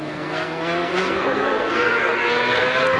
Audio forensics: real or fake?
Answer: fake